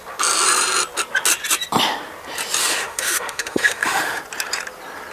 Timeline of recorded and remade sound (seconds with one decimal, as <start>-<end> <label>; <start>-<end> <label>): 0.0-2.6 recorded; 2.6-4.2 remade; 4.2-5.1 recorded